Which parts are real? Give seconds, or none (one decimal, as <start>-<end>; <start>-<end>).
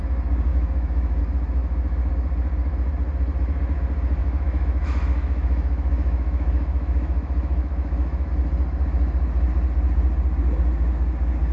0.0-0.5; 1.2-1.6; 2.1-4.2; 8.3-11.5